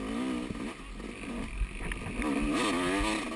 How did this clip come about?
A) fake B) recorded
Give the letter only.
B